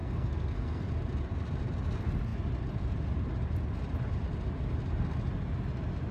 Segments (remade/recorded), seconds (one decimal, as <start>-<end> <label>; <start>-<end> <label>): 0.0-0.9 remade; 0.9-6.1 recorded